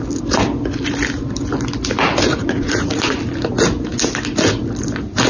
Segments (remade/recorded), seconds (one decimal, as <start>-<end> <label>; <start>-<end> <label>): 0.0-2.3 recorded; 2.3-3.2 remade; 3.2-5.3 recorded

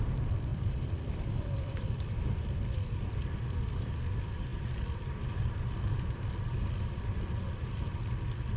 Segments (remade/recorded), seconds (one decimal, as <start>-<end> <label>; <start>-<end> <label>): 0.0-8.6 recorded